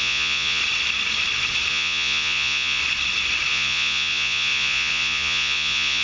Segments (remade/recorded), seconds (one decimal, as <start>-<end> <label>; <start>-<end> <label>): 0.0-0.6 remade; 0.6-1.7 recorded; 1.7-2.8 remade; 2.8-3.5 recorded; 3.5-6.0 remade